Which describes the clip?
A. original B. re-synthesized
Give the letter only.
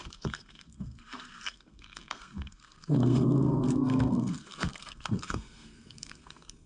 B